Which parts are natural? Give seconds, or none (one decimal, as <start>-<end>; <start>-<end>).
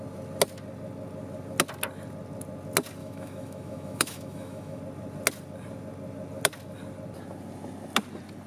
0.0-3.0; 4.8-8.5